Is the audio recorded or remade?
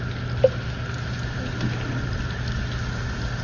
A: recorded